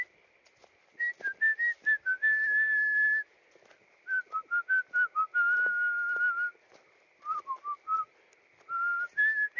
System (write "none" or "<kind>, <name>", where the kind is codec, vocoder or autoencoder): none